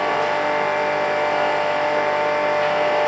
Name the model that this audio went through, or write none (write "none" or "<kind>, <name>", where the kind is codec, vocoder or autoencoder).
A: none